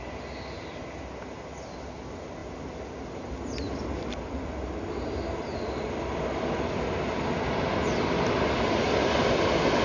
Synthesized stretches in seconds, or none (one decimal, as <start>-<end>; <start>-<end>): none